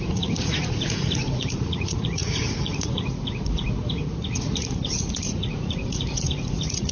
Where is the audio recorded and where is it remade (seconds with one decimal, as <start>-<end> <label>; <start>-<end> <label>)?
0.0-6.9 remade